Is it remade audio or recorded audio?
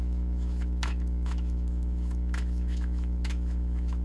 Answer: remade